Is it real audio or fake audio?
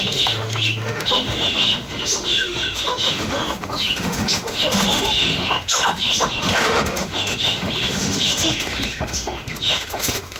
fake